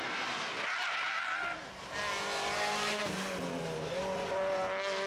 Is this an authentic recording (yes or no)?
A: yes